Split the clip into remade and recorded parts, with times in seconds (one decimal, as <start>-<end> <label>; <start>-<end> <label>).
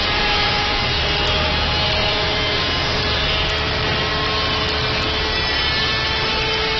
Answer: 0.0-1.0 remade; 1.0-2.0 recorded; 2.0-3.0 remade; 3.0-6.8 recorded